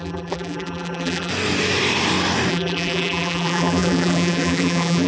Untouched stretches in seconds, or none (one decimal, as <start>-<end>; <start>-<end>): 1.3-2.5